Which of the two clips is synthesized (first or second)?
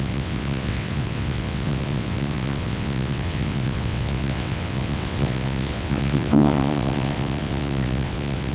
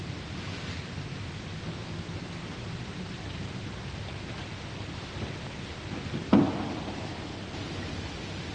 first